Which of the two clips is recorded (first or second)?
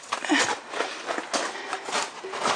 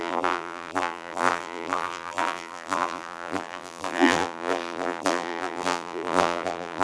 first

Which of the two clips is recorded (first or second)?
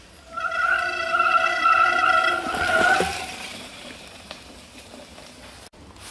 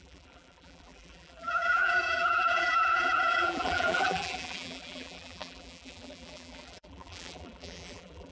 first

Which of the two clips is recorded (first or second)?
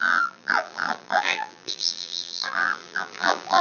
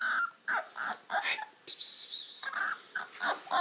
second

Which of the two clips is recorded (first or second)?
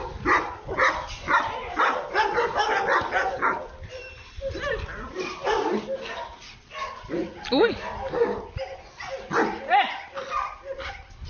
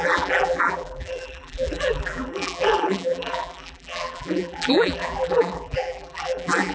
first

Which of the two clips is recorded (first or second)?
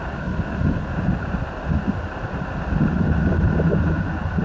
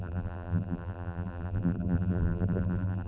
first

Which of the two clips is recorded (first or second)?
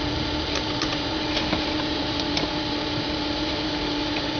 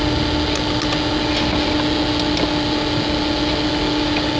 second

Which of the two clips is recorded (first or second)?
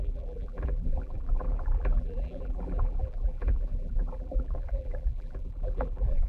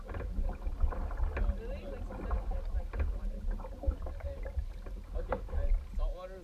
second